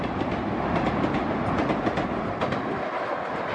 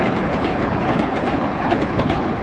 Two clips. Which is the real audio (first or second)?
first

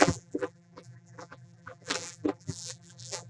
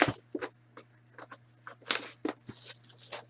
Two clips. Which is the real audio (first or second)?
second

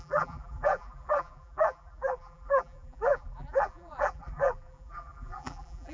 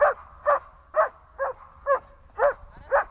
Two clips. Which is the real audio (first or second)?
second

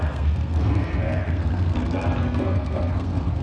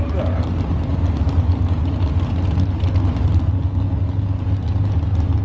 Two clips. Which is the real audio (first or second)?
second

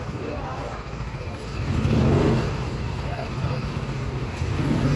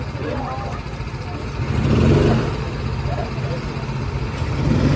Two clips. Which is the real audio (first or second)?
second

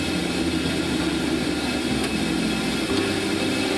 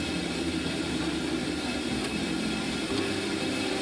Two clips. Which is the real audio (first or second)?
first